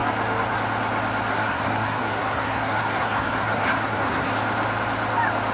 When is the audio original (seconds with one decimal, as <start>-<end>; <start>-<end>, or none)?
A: 0.0-1.3; 4.3-5.5

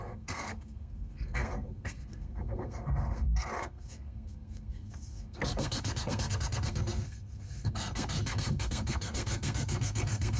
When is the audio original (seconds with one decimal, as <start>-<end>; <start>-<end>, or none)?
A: none

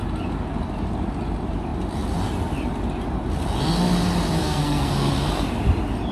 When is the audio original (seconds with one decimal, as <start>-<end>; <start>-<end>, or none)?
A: 0.0-4.4; 5.1-6.1

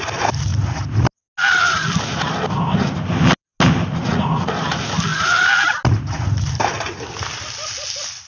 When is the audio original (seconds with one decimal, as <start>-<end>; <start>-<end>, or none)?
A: 0.0-3.9; 4.5-8.3

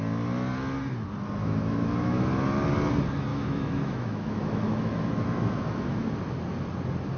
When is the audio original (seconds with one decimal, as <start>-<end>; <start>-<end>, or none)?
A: 0.0-1.4; 2.3-3.3; 6.1-7.2

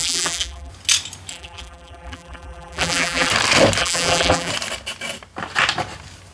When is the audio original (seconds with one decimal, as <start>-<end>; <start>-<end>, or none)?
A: 0.7-1.3; 3.3-3.8; 4.5-6.3